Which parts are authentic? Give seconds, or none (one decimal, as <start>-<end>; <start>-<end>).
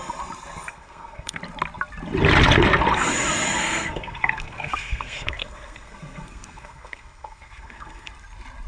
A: 0.0-0.7; 1.4-3.6; 8.1-8.7